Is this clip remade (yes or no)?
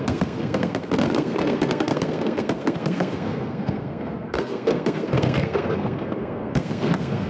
yes